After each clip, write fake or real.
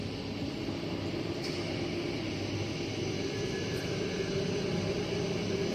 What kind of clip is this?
real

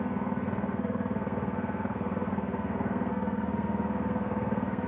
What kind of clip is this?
fake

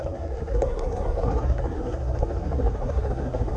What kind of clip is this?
fake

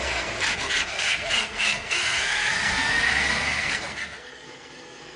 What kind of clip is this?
fake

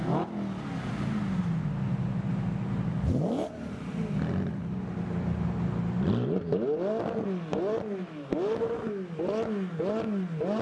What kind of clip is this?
real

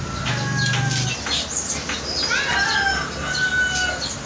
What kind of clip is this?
real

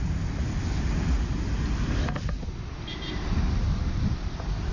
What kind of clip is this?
real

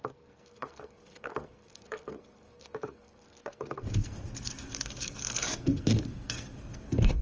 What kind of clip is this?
fake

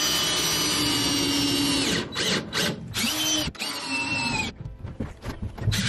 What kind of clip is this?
real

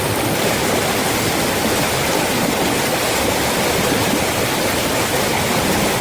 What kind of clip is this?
real